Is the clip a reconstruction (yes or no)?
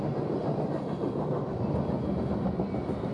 no